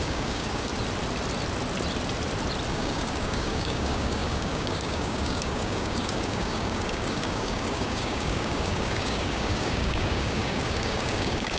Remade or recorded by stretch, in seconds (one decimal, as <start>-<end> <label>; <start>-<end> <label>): 0.0-0.7 remade; 0.7-2.7 recorded; 2.7-11.6 remade